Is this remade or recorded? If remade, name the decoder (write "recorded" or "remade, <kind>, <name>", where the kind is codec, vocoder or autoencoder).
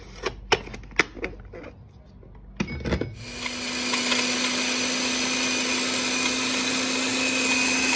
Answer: recorded